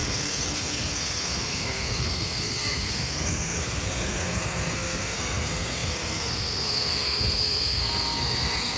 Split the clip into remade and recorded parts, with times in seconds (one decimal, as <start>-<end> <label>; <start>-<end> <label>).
0.0-8.8 remade